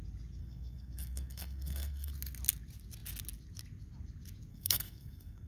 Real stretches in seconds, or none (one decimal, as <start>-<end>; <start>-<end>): 0.0-0.4; 2.1-4.5